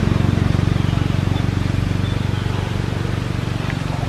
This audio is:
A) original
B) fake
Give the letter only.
A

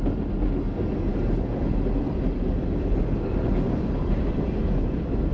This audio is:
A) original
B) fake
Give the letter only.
A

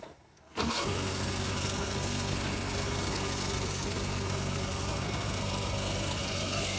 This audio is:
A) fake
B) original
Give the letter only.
A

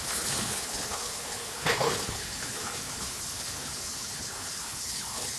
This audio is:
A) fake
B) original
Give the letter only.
A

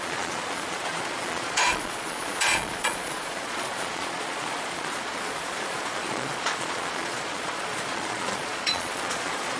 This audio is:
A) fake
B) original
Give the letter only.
A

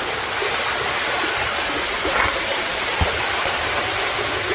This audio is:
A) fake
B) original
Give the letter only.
B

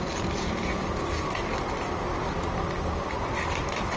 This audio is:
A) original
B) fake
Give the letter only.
A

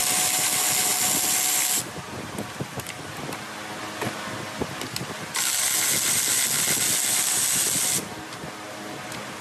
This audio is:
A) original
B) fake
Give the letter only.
A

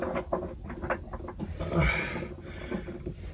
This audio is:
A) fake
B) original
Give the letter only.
B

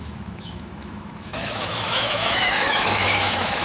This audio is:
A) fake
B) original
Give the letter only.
A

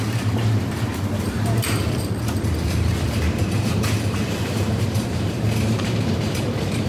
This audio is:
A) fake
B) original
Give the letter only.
A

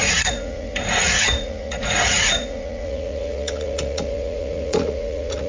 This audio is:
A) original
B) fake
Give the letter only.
B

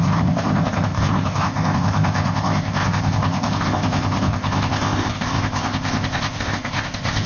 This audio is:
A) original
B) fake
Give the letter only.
B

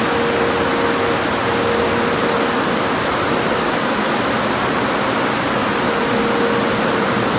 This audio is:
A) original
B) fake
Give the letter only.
A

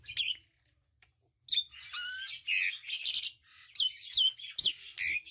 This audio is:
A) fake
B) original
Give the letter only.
B